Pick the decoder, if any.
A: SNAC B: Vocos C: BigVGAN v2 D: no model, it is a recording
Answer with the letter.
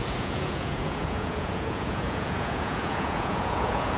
B